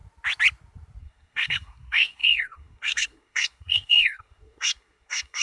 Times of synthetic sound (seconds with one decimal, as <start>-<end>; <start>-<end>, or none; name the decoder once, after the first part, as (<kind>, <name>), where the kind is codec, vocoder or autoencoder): 1.0-5.4 (codec, SNAC)